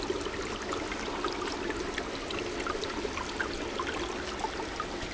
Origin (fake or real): real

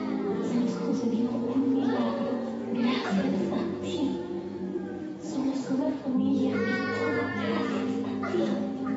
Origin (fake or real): fake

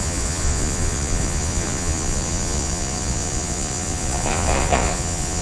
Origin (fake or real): fake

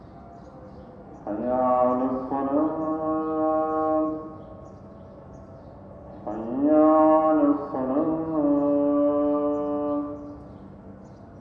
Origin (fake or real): real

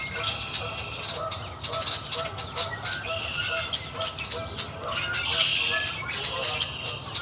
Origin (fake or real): real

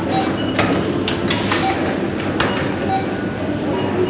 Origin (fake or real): real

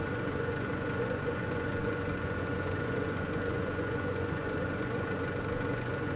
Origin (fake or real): fake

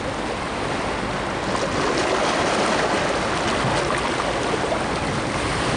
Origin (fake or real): real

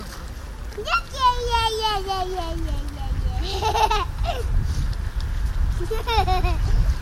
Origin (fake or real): real